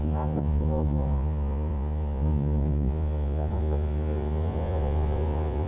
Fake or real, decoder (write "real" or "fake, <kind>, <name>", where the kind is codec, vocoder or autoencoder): fake, vocoder, Vocos